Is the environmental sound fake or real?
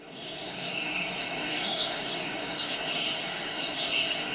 fake